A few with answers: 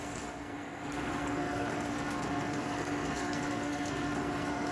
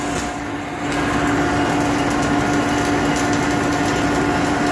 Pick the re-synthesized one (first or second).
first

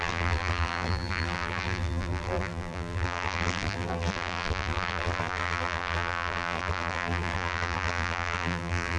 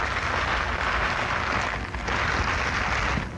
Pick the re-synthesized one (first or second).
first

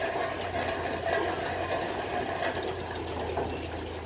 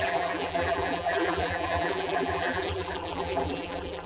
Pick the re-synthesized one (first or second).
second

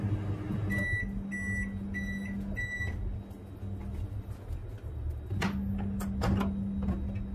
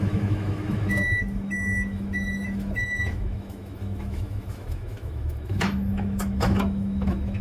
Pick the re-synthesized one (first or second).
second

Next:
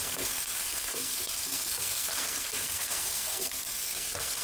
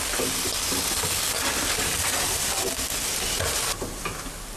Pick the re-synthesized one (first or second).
first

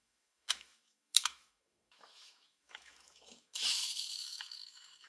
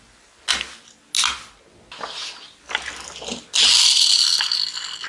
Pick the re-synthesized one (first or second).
first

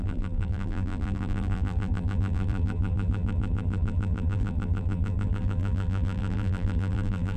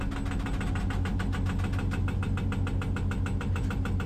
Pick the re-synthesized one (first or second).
first